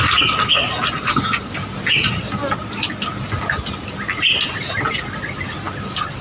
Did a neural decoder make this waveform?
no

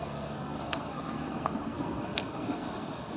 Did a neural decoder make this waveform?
yes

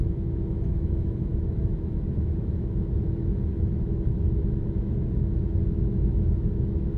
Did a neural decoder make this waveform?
yes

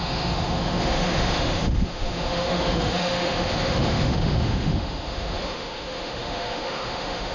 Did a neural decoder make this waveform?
yes